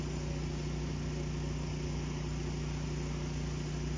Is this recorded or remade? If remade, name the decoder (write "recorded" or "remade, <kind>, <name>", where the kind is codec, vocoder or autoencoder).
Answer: recorded